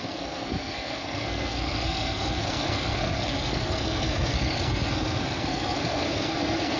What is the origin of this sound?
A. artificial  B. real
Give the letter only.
A